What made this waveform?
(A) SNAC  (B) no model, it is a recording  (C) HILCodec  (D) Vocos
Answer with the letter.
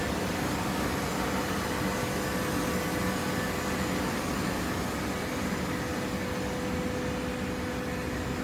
B